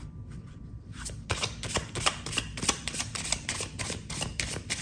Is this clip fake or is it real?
fake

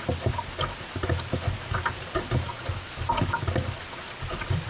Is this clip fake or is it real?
real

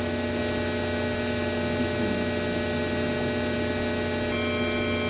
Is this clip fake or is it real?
real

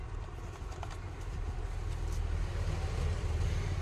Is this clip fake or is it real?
real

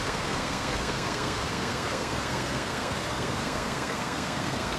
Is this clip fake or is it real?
fake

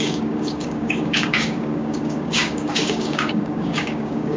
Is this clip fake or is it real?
fake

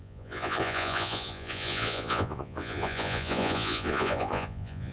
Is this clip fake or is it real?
fake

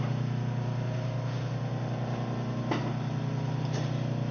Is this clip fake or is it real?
real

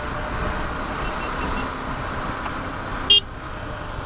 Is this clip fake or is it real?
real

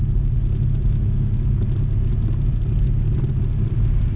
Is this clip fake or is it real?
real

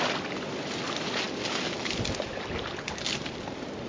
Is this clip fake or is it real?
real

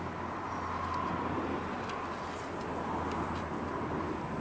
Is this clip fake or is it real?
real